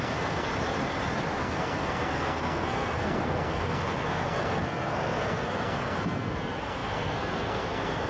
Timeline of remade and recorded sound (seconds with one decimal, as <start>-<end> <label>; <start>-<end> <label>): 0.0-0.5 remade; 0.5-1.4 recorded; 1.4-8.1 remade